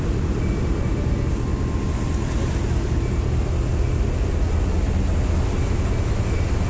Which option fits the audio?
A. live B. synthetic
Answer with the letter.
A